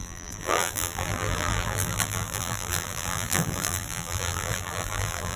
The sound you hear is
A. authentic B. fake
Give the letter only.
B